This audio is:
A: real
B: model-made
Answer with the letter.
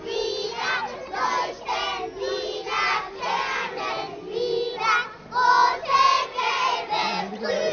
A